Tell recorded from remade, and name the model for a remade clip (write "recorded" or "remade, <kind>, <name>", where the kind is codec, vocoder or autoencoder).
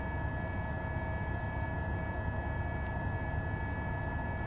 recorded